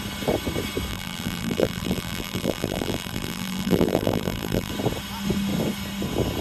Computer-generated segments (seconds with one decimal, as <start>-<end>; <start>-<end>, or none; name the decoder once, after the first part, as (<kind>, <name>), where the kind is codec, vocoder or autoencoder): 0.9-4.7 (vocoder, BigVGAN v2)